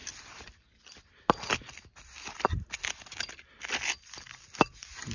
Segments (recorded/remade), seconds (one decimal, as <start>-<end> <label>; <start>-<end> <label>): 0.0-5.1 recorded